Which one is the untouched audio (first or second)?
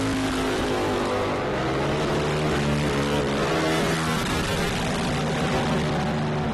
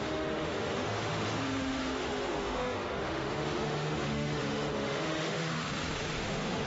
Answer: first